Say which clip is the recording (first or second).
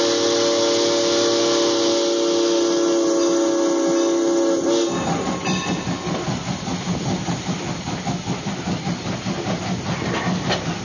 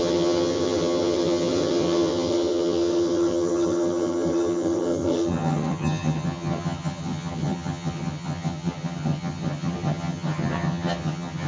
first